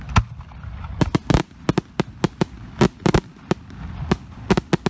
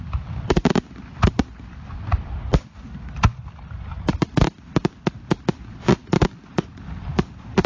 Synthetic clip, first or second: second